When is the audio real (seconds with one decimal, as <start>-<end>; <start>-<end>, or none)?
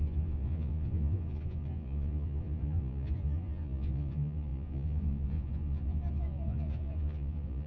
none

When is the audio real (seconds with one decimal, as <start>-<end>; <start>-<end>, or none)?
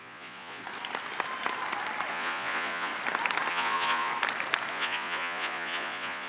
0.6-2.1; 2.9-3.5; 4.1-4.7